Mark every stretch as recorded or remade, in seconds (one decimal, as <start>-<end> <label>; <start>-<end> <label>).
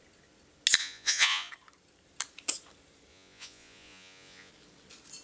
0.0-0.8 recorded; 0.8-1.5 remade; 1.5-3.1 recorded; 3.1-4.5 remade; 4.5-5.2 recorded